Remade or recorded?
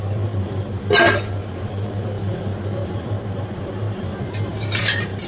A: remade